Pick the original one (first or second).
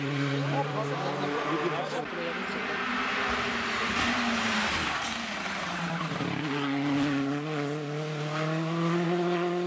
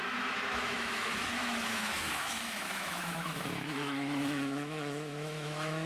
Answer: first